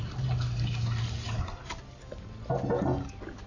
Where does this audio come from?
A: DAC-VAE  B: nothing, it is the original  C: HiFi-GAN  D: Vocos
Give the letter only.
B